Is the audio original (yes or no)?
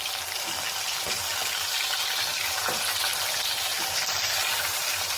yes